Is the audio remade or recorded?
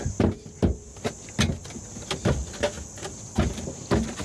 recorded